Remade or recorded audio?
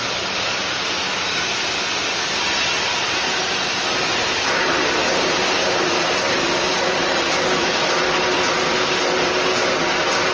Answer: recorded